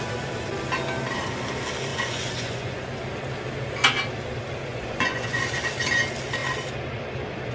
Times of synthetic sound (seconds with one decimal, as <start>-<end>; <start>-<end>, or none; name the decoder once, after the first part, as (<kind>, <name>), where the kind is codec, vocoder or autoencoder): 1.9-2.8 (vocoder, Vocos); 4.7-5.4